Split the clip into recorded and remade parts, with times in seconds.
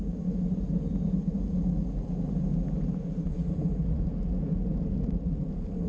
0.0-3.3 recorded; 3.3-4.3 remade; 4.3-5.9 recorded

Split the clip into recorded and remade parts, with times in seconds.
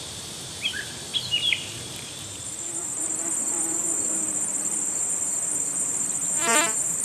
0.0-7.0 remade